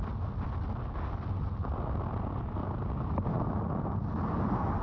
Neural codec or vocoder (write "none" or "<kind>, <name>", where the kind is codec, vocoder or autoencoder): none